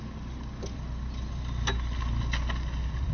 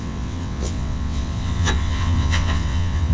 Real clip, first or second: first